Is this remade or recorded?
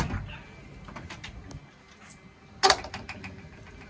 recorded